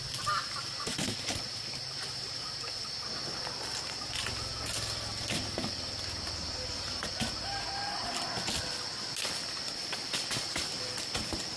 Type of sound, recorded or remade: recorded